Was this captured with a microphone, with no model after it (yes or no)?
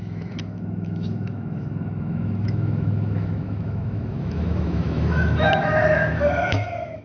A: no